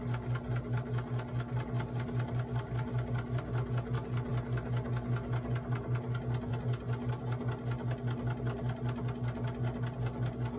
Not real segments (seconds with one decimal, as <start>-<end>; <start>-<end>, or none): none